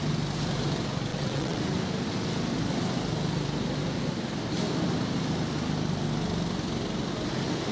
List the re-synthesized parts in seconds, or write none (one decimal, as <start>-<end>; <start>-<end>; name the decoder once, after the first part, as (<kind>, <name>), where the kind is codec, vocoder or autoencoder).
1.1-1.6 (vocoder, WaveNeXt)